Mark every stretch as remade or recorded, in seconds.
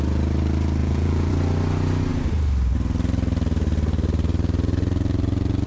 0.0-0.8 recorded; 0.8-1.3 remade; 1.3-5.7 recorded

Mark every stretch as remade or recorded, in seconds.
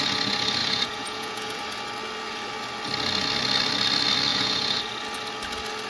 0.0-0.6 recorded; 0.6-1.6 remade; 1.6-4.3 recorded; 4.3-4.8 remade; 4.8-5.9 recorded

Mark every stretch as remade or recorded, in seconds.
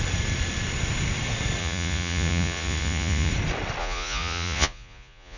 0.0-1.6 recorded; 1.6-3.3 remade; 3.3-3.8 recorded; 3.8-5.4 remade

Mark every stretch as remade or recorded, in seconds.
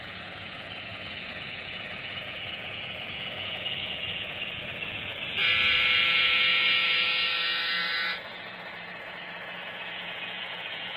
0.0-11.0 remade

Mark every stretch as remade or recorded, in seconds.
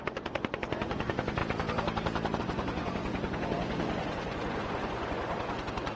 0.0-1.4 remade; 1.4-2.4 recorded; 2.4-6.0 remade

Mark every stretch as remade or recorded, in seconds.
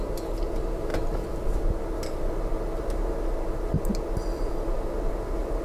0.0-5.6 recorded